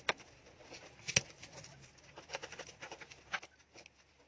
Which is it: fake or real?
real